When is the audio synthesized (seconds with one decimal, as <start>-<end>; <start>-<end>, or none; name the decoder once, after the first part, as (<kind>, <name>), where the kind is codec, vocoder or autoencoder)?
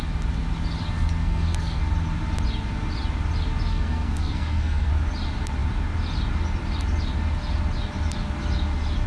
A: 1.2-1.8 (codec, SNAC); 3.7-4.9